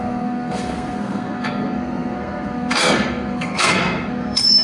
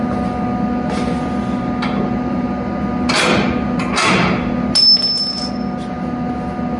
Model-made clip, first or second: first